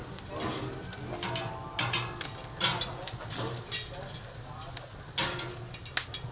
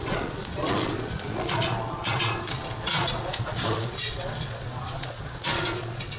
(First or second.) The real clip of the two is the first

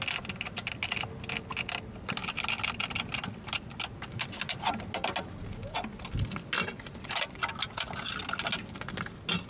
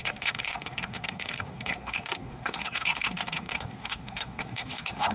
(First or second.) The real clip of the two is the first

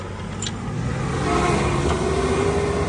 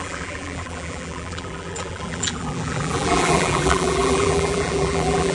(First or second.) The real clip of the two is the first